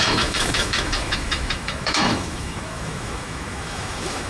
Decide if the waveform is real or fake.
fake